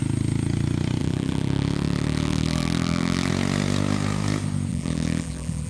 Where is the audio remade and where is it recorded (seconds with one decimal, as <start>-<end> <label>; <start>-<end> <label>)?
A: 0.0-1.0 recorded; 1.0-3.3 remade; 3.3-4.7 recorded; 4.7-5.7 remade